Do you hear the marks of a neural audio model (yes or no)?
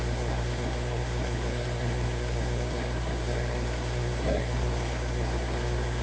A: yes